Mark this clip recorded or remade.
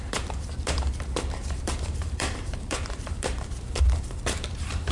remade